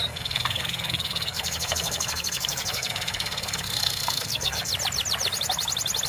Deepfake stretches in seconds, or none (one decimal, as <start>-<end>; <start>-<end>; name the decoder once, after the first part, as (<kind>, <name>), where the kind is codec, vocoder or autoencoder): 0.0-4.7 (codec, SNAC)